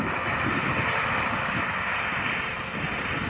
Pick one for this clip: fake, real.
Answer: real